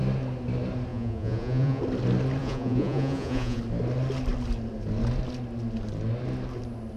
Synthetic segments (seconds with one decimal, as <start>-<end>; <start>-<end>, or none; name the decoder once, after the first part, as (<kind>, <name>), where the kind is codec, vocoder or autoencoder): 0.9-1.8 (vocoder, Vocos); 2.4-3.6